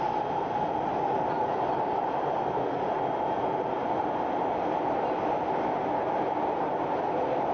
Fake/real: real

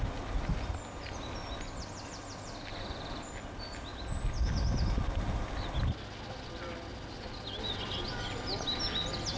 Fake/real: real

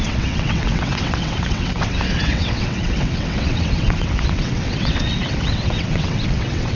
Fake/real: fake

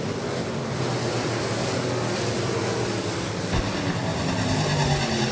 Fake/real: real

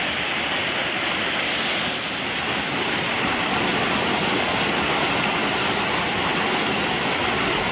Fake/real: real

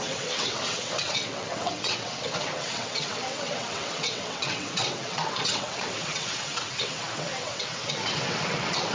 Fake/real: fake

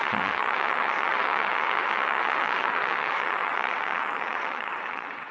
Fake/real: fake